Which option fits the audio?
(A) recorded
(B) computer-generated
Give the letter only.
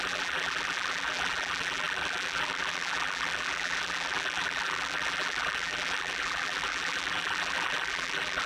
B